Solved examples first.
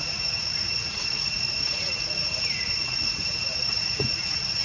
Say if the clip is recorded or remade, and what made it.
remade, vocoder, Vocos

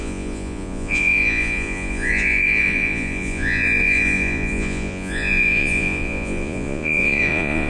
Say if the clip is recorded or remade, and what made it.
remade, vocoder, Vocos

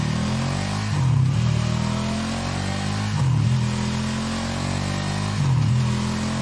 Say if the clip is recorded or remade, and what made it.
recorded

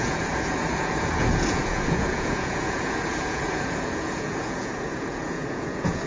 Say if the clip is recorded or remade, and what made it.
remade, vocoder, Vocos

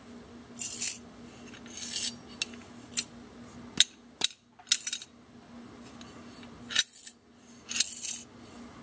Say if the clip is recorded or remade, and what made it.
recorded